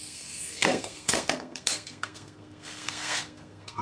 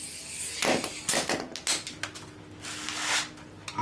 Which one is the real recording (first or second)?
second